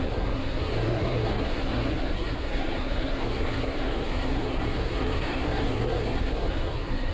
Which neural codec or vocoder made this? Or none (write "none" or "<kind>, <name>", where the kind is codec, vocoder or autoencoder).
codec, SNAC